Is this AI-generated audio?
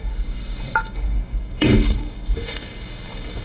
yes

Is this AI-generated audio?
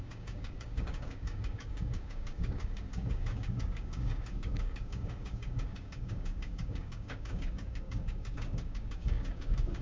yes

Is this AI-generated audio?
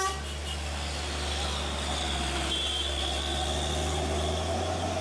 no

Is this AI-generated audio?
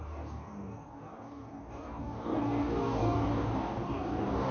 yes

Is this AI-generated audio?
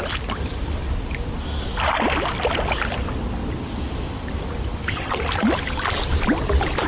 no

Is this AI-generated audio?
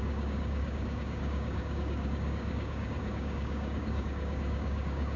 yes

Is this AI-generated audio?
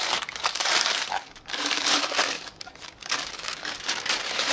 yes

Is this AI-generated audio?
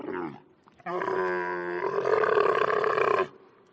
no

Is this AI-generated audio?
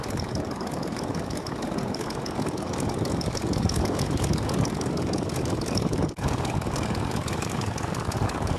yes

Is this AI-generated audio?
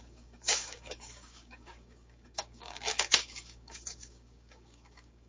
yes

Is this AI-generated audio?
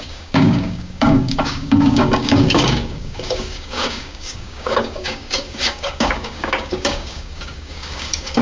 yes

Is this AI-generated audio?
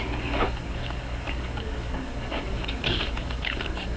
yes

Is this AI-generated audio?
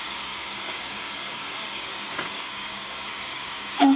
yes